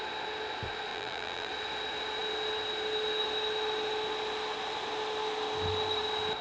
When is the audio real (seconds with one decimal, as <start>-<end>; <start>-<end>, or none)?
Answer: 0.0-0.9; 1.5-6.4